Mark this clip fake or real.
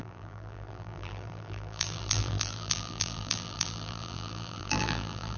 fake